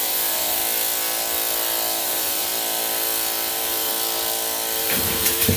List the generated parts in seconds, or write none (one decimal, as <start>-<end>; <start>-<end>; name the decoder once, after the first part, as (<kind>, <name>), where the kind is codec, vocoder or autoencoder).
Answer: 0.0-0.6 (vocoder, BigVGAN v2); 2.0-2.5; 3.5-3.9; 4.8-5.6